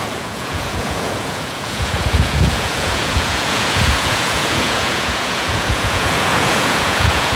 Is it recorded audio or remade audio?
remade